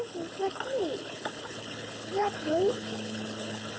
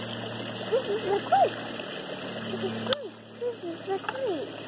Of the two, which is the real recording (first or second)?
second